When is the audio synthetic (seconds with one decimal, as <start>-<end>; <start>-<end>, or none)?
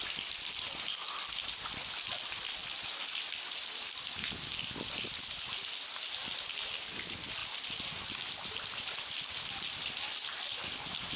none